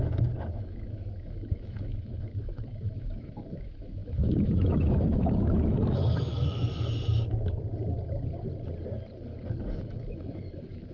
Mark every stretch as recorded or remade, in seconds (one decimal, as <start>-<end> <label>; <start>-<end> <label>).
0.0-6.7 remade; 6.7-9.7 recorded; 9.7-10.9 remade